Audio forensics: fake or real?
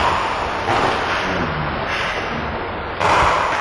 real